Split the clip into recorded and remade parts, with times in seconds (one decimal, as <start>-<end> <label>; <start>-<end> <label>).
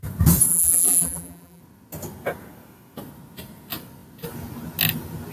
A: 0.0-0.5 recorded; 0.5-1.6 remade; 1.6-5.3 recorded